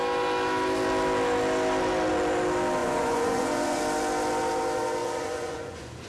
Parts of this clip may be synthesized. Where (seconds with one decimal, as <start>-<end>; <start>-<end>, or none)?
2.8-3.8; 5.0-6.1